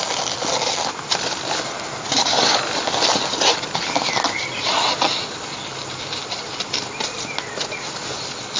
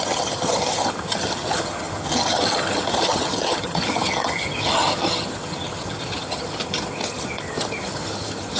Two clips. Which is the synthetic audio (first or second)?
second